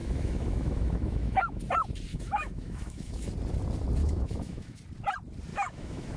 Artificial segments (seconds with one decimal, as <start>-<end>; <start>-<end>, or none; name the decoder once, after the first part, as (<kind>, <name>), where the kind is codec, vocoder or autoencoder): 0.0-1.6 (autoencoder, DAC-VAE); 2.1-3.3; 4.0-4.8; 5.5-6.2